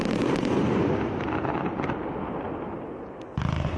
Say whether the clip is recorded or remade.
recorded